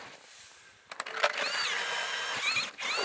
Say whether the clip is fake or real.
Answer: real